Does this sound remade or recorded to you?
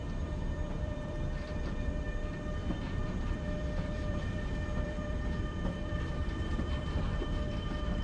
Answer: remade